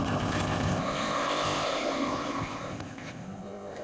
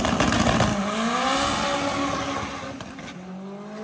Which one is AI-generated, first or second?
first